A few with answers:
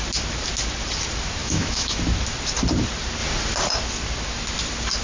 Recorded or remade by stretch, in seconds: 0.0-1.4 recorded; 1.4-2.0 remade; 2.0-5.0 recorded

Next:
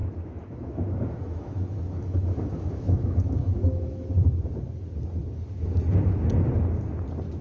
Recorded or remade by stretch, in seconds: 0.0-4.1 remade; 4.1-7.4 recorded

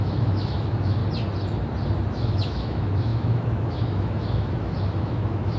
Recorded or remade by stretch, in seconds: 0.0-1.0 remade; 1.0-2.1 recorded; 2.1-5.6 remade

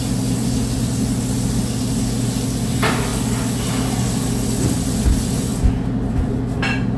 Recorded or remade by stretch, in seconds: 0.0-7.0 recorded

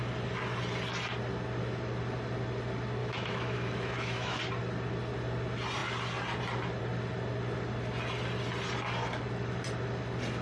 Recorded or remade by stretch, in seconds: 0.0-3.0 recorded; 3.0-4.4 remade; 4.4-10.4 recorded